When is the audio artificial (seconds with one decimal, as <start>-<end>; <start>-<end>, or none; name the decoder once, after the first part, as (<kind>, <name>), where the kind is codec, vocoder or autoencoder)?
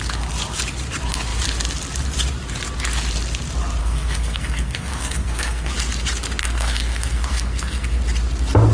3.8-5.7 (codec, SNAC); 6.4-8.0